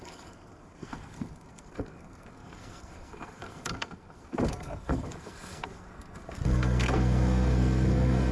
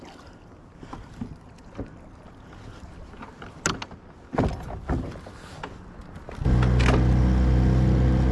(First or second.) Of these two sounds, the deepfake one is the first